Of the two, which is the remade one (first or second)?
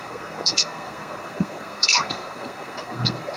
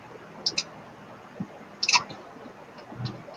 first